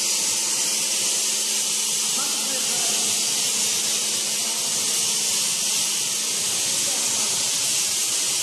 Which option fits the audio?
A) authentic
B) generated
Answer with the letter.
A